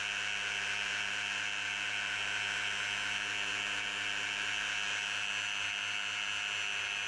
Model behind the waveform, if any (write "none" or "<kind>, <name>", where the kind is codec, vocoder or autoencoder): none